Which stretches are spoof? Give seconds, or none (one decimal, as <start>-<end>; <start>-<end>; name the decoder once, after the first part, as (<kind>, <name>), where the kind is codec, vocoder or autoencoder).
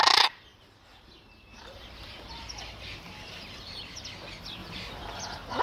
0.5-3.9 (vocoder, BigVGAN v2)